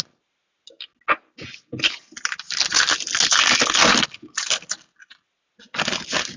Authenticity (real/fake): real